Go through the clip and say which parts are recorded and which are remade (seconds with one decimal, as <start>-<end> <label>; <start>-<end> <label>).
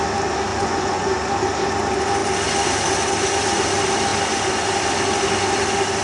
0.0-0.5 recorded; 0.5-1.1 remade; 1.1-6.0 recorded